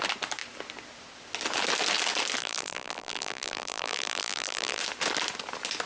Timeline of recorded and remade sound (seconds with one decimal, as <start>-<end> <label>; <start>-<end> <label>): 0.0-2.4 recorded; 2.4-4.8 remade; 4.8-5.9 recorded